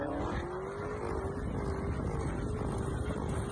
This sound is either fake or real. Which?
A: real